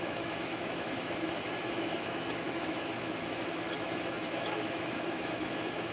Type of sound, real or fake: fake